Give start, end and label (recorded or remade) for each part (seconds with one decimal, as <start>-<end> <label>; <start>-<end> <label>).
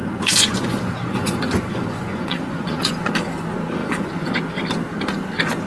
0.0-3.1 remade; 3.1-3.8 recorded; 3.8-4.4 remade; 4.4-5.7 recorded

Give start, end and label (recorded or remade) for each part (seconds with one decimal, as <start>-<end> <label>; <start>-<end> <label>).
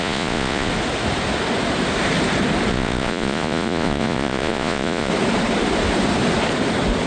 0.0-0.7 remade; 0.7-2.7 recorded; 2.7-5.1 remade; 5.1-7.1 recorded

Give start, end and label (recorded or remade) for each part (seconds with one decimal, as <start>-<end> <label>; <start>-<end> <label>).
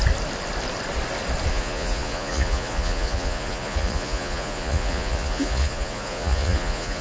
0.0-1.5 recorded; 1.5-7.0 remade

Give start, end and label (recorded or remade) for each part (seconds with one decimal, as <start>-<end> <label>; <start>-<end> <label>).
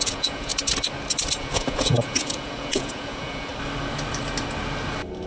0.0-0.5 remade; 0.5-1.4 recorded; 1.4-3.5 remade; 3.5-5.3 recorded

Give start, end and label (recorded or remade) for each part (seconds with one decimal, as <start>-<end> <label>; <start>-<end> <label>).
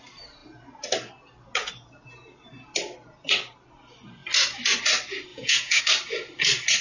0.0-5.3 recorded; 5.3-5.8 remade; 5.8-6.8 recorded